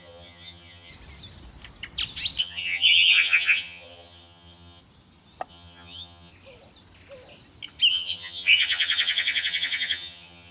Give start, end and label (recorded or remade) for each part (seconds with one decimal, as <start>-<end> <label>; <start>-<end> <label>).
0.0-0.9 remade; 0.9-2.4 recorded; 2.4-4.8 remade; 4.8-5.5 recorded; 5.5-6.3 remade; 6.3-7.9 recorded; 7.9-10.5 remade